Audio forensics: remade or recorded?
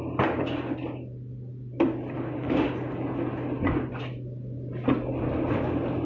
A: recorded